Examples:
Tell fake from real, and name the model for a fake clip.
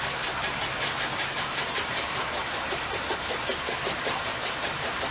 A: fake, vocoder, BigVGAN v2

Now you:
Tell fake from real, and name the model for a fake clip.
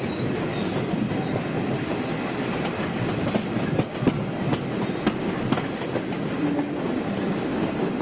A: real